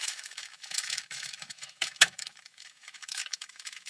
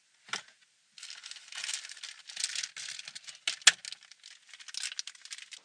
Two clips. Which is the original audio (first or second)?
second